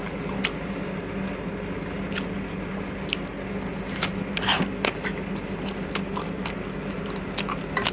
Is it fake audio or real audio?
real